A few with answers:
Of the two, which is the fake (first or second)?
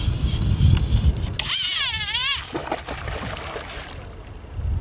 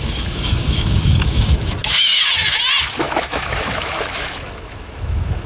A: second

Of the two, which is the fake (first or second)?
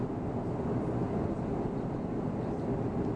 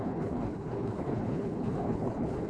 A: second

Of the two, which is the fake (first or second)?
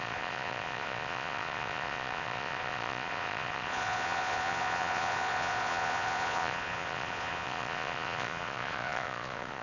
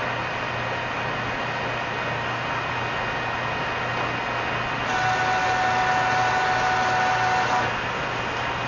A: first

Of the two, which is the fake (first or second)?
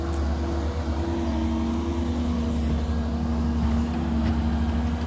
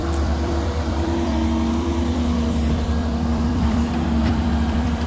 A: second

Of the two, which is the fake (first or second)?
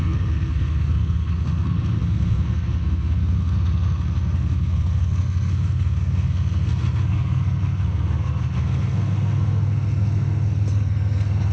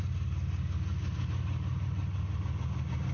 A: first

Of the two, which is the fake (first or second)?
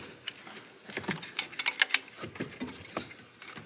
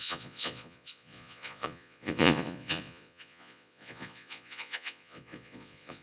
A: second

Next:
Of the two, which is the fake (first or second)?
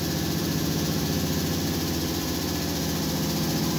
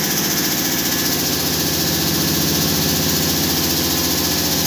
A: first